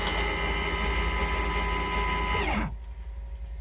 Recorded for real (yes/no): yes